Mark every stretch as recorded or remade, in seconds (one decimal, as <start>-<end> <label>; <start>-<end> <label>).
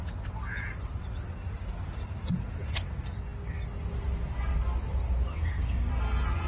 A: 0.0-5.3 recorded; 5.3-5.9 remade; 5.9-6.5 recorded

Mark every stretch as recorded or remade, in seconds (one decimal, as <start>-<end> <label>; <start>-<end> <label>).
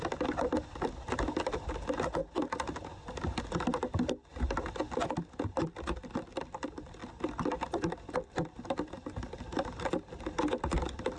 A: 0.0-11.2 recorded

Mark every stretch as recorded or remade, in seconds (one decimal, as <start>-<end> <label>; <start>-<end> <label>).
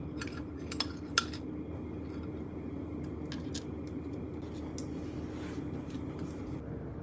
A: 0.0-7.0 recorded